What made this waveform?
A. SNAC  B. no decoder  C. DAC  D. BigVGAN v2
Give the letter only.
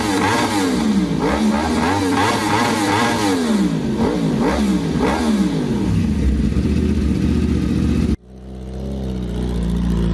B